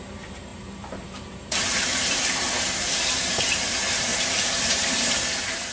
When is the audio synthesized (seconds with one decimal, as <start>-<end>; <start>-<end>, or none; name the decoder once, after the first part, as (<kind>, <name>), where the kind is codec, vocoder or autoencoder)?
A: 0.0-5.7 (vocoder, BigVGAN v2)